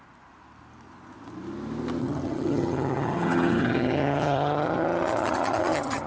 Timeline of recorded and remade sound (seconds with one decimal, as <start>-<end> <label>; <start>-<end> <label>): 0.0-2.0 recorded; 2.0-6.1 remade